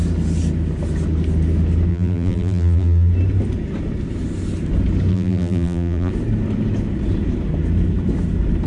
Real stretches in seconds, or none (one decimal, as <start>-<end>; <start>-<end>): 0.0-1.9; 3.1-5.1; 6.1-8.7